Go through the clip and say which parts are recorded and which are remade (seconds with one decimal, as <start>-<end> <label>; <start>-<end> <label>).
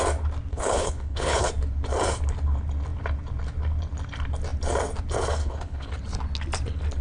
0.0-0.5 recorded; 0.5-1.5 remade; 1.5-5.4 recorded; 5.4-5.9 remade; 5.9-7.0 recorded